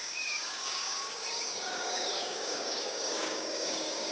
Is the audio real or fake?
fake